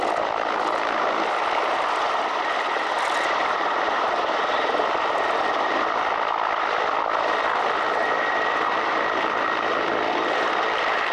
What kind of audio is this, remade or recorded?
remade